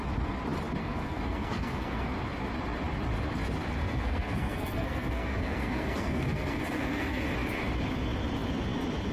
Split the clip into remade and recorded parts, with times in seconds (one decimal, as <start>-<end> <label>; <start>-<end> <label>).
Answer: 0.0-0.8 recorded; 0.8-2.1 remade; 2.1-3.8 recorded; 3.8-7.2 remade; 7.2-9.1 recorded